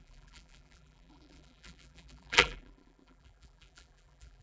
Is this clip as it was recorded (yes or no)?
no